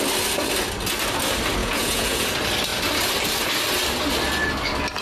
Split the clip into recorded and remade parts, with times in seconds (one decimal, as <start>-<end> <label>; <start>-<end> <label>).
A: 0.0-1.6 recorded; 1.6-2.3 remade; 2.3-5.0 recorded